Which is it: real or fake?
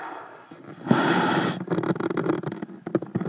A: real